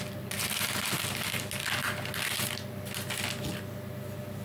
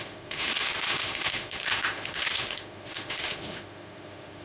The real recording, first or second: first